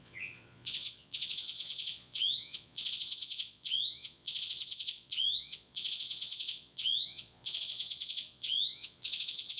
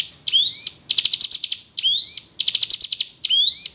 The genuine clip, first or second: second